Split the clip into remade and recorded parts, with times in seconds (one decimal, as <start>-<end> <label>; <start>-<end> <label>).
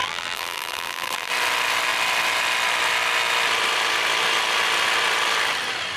0.0-1.3 remade; 1.3-6.0 recorded